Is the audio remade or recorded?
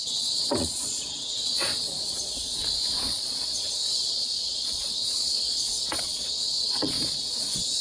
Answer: remade